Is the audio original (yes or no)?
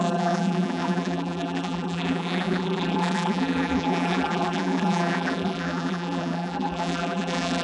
no